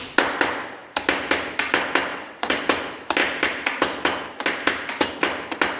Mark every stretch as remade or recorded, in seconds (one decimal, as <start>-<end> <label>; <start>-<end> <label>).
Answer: 0.0-2.1 recorded; 2.1-2.6 remade; 2.6-5.8 recorded